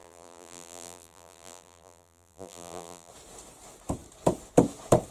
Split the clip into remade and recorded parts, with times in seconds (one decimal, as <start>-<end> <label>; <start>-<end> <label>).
0.0-3.1 remade; 3.1-5.1 recorded

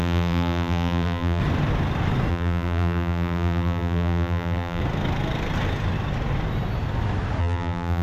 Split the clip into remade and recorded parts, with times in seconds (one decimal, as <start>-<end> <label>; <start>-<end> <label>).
0.0-1.4 remade; 1.4-2.3 recorded; 2.3-4.8 remade; 4.8-7.4 recorded; 7.4-8.0 remade

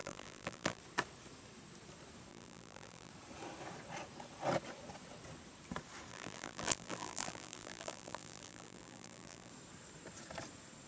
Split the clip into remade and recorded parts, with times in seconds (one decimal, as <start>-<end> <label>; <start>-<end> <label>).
0.0-0.8 remade; 0.8-2.3 recorded; 2.3-3.1 remade; 3.1-6.1 recorded; 6.1-9.5 remade; 9.5-10.9 recorded

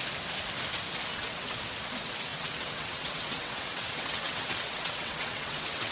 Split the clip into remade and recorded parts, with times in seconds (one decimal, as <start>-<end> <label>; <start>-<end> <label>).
0.0-1.1 recorded; 1.1-1.6 remade; 1.6-2.3 recorded; 2.3-5.9 remade

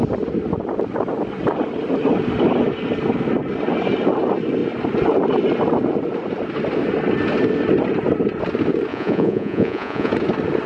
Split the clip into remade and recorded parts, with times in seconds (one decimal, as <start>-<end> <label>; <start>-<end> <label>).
0.0-8.9 recorded; 8.9-10.1 remade; 10.1-10.7 recorded

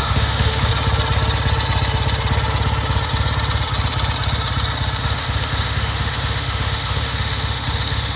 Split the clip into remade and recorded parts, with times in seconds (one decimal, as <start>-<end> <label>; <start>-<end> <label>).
0.0-0.7 remade; 0.7-5.0 recorded; 5.0-8.2 remade

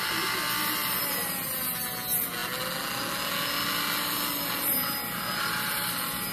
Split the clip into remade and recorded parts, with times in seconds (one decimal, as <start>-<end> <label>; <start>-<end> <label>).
0.0-6.3 recorded